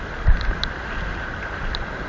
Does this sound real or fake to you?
real